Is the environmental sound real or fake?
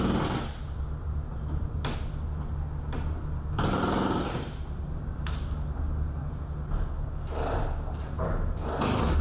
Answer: real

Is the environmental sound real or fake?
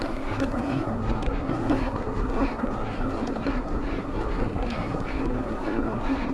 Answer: fake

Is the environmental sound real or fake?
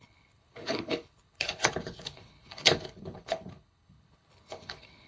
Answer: fake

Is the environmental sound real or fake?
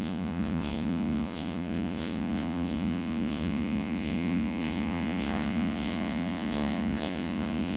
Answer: fake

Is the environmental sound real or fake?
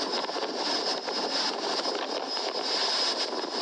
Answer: real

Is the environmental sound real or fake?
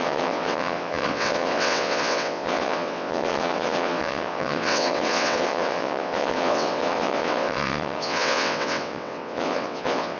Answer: fake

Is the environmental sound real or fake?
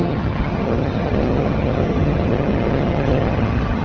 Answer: fake